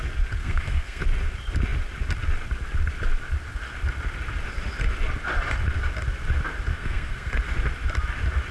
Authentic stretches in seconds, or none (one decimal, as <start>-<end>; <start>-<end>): 0.0-0.4; 1.0-6.7; 7.3-8.5